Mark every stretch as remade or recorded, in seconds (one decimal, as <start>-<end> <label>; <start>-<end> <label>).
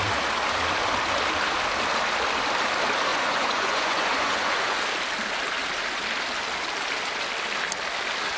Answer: 0.0-3.1 recorded; 3.1-4.8 remade; 4.8-8.4 recorded